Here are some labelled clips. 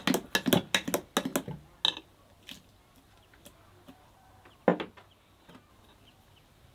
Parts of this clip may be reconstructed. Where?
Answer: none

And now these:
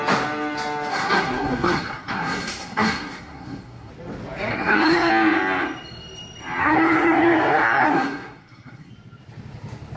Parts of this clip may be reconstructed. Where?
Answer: 0.9-3.9 (codec, SNAC); 4.5-5.1; 6.6-8.9

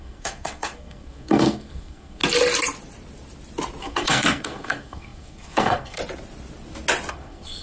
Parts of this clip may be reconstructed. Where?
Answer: 0.0-2.2 (codec, SNAC); 3.8-6.0; 7.1-7.6

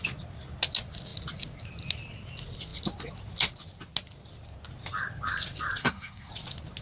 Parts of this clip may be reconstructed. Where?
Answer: 5.8-6.3 (codec, SNAC)

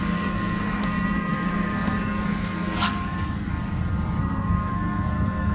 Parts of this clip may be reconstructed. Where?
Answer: 0.0-3.5 (codec, SNAC); 4.2-5.5